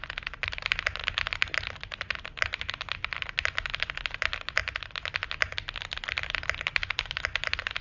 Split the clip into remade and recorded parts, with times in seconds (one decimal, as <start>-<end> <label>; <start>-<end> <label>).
0.0-7.8 recorded